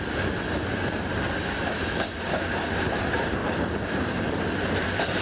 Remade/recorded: recorded